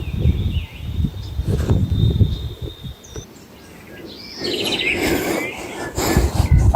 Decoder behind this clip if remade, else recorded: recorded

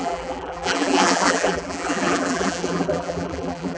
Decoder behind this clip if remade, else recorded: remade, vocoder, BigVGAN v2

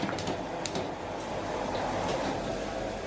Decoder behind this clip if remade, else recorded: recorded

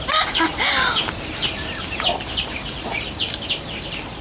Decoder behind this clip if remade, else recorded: remade, vocoder, BigVGAN v2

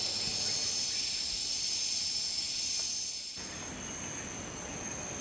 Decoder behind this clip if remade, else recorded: recorded